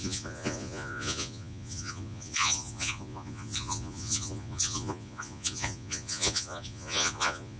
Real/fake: fake